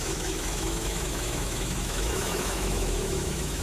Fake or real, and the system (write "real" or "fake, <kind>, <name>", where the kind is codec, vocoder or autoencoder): fake, autoencoder, DAC-VAE